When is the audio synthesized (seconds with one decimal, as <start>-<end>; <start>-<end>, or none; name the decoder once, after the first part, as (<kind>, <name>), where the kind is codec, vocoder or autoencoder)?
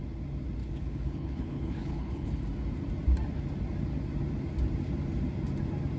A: 0.6-2.4 (codec, HILCodec)